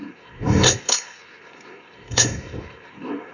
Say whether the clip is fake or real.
fake